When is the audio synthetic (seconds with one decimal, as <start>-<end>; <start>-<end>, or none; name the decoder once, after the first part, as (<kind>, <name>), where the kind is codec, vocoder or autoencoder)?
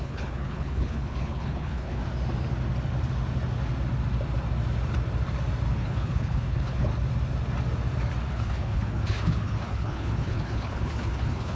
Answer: 0.0-2.0 (codec, HILCodec); 5.7-6.9; 8.3-11.6